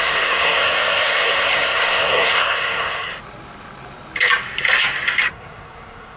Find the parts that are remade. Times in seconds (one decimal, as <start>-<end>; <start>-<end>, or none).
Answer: 0.0-3.1; 5.3-6.2